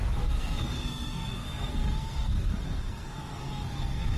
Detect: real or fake fake